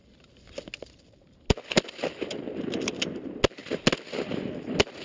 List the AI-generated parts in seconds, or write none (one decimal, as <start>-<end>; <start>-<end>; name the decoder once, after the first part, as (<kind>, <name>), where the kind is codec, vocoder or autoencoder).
none